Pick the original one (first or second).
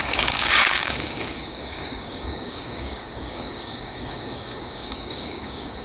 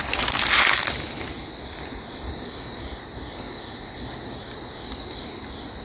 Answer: second